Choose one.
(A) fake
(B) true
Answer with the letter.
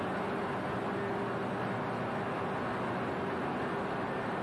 B